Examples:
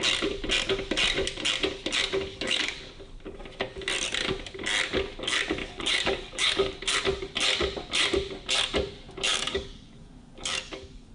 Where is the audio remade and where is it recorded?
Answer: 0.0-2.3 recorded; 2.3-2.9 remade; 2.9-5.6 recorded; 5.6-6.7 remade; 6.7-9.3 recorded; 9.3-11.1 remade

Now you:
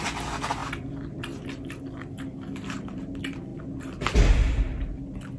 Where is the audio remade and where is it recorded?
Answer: 0.0-5.4 recorded

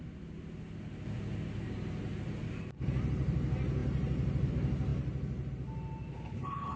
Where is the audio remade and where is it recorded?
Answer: 0.0-6.1 recorded; 6.1-6.8 remade

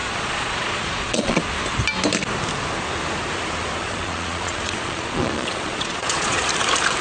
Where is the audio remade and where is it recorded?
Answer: 0.0-1.4 remade; 1.4-3.8 recorded; 3.8-6.4 remade; 6.4-7.0 recorded

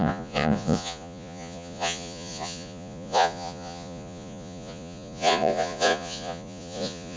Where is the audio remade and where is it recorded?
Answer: 0.0-7.2 remade